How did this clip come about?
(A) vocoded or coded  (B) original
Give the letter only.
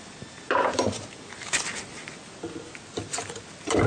B